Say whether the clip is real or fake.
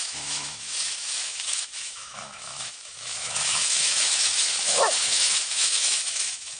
fake